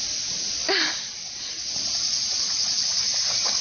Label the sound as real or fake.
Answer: real